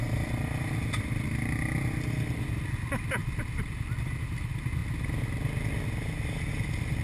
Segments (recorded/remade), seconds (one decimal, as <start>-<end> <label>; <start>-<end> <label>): 0.0-7.0 recorded